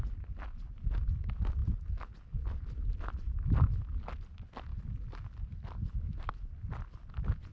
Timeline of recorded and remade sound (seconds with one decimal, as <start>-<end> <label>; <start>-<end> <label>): 0.0-7.5 recorded